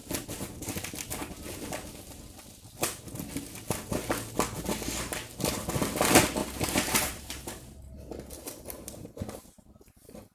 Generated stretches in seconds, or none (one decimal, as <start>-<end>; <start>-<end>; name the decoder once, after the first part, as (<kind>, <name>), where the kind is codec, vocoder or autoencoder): 6.4-8.1 (vocoder, BigVGAN v2)